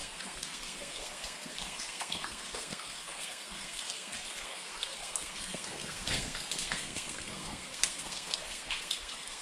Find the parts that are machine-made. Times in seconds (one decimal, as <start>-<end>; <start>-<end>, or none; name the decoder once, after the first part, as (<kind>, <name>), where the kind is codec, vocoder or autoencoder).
0.0-9.4 (codec, SNAC)